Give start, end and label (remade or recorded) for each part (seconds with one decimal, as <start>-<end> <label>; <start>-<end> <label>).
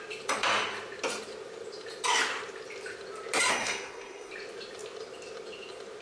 0.0-3.5 recorded; 3.5-4.3 remade; 4.3-6.0 recorded